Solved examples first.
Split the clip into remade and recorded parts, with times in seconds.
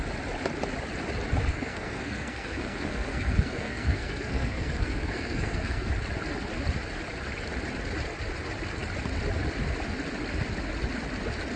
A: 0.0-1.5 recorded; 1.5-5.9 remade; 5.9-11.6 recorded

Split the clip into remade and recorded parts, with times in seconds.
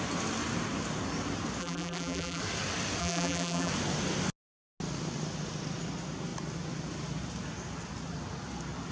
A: 0.0-1.6 recorded; 1.6-2.4 remade; 2.4-3.0 recorded; 3.0-3.7 remade; 3.7-8.9 recorded